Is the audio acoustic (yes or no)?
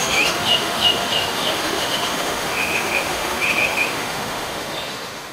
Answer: no